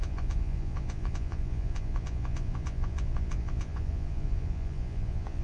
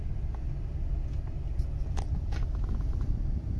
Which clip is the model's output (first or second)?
first